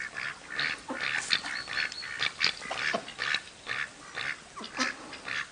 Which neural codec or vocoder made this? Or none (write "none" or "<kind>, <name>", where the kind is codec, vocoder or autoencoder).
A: none